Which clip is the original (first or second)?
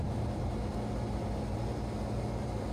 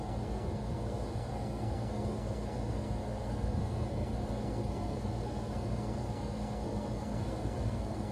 first